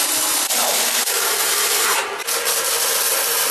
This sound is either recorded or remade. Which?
recorded